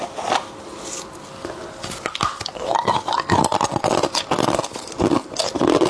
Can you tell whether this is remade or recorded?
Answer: recorded